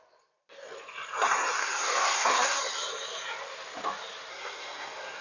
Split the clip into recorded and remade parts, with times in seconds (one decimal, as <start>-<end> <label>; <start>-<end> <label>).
0.0-1.6 recorded; 1.6-2.6 remade; 2.6-4.3 recorded; 4.3-5.2 remade